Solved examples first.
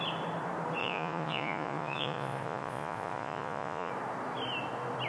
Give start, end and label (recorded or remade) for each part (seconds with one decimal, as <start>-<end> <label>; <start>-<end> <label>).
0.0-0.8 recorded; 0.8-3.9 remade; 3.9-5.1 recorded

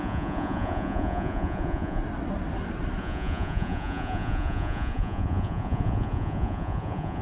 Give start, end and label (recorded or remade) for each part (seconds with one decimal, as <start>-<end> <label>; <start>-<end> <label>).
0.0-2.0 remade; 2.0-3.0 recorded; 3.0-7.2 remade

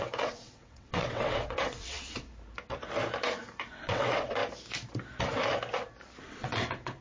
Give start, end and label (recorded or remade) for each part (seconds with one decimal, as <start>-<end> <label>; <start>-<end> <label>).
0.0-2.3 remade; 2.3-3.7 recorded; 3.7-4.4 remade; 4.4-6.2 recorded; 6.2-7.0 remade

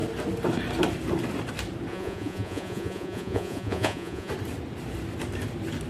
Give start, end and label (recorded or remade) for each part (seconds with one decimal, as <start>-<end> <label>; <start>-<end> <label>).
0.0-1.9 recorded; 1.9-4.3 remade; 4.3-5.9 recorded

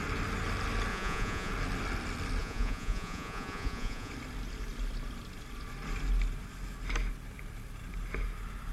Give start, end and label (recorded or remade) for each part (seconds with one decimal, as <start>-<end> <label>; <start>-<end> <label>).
0.0-0.9 recorded; 0.9-1.5 remade; 1.5-2.4 recorded; 2.4-4.1 remade; 4.1-8.7 recorded